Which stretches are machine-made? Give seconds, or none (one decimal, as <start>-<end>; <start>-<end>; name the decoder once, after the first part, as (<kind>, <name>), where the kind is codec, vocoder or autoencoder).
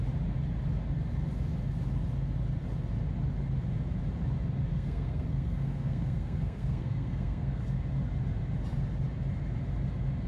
4.7-7.6 (codec, SNAC)